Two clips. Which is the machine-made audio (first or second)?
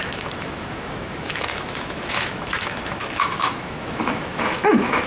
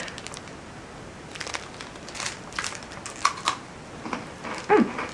first